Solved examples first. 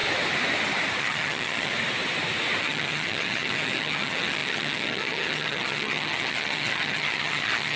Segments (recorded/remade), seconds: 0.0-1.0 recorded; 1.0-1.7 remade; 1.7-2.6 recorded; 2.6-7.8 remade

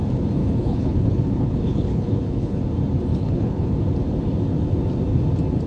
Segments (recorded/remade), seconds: 0.0-0.4 recorded; 0.4-2.6 remade; 2.6-3.1 recorded; 3.1-3.8 remade; 3.8-5.7 recorded

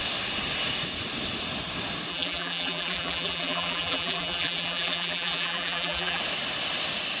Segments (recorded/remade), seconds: 0.0-2.1 recorded; 2.1-6.2 remade; 6.2-7.2 recorded

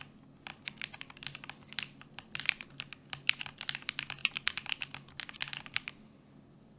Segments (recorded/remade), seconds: 0.0-6.8 recorded

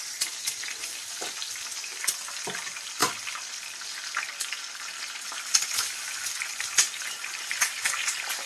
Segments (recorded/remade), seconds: 0.0-8.5 recorded

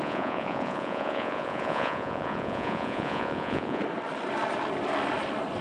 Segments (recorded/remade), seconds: 0.0-3.8 remade; 3.8-5.6 recorded

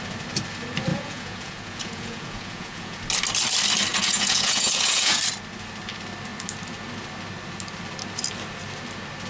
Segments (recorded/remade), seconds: 0.0-0.9 recorded; 0.9-3.0 remade; 3.0-3.9 recorded; 3.9-5.2 remade; 5.2-9.3 recorded